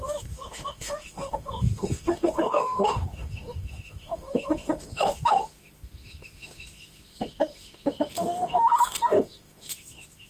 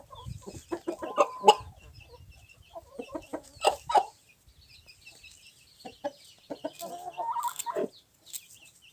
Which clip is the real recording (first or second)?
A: second